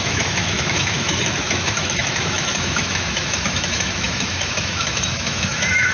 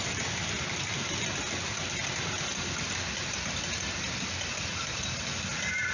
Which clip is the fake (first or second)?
first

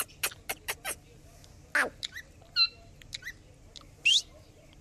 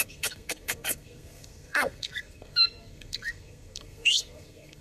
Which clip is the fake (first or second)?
second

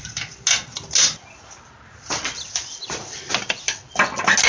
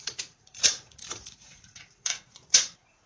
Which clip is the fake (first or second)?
second